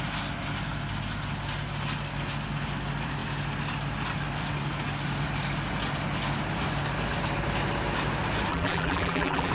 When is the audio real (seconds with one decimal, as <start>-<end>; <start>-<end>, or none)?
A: 0.0-8.5